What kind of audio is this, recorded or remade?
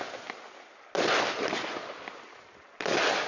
recorded